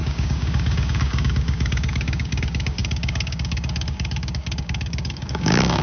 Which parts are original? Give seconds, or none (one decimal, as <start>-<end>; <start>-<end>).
none